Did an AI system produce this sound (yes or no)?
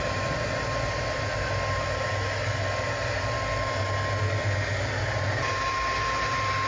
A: no